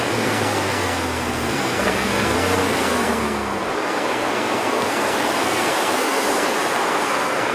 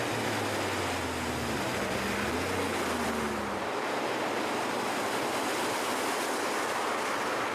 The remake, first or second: first